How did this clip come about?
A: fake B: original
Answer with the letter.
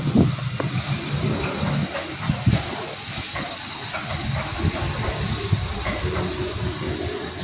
A